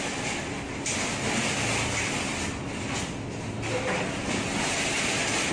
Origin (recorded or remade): recorded